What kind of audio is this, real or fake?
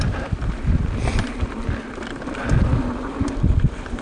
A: real